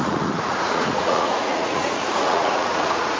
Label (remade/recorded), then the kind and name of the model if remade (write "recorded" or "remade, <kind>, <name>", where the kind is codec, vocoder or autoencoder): remade, vocoder, Vocos